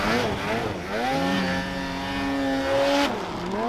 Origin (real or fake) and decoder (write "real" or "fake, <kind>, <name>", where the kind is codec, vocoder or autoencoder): real